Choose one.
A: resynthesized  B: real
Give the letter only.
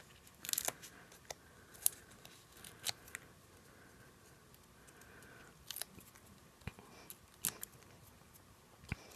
B